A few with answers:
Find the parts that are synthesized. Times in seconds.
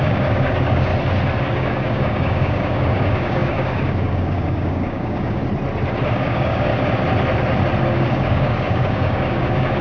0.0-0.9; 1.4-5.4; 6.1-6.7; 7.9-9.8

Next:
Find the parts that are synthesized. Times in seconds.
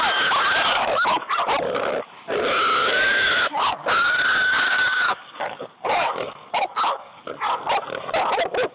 0.7-1.3; 2.8-7.3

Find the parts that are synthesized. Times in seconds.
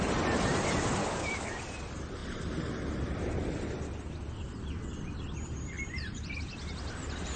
1.0-1.6